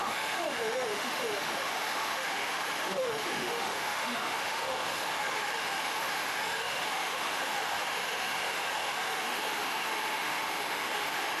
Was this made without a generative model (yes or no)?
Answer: no